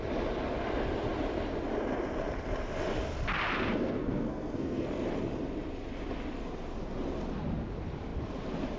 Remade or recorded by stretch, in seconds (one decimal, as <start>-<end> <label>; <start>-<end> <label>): 0.0-3.7 recorded; 3.7-4.9 remade; 4.9-8.8 recorded